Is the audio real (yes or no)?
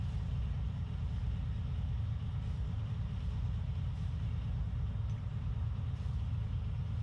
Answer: yes